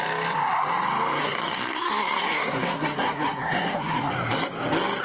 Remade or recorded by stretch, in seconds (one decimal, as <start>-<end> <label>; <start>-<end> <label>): 0.0-1.2 recorded; 1.2-4.1 remade; 4.1-5.0 recorded